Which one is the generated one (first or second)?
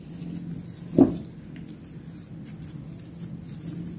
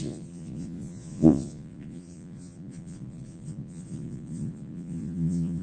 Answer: second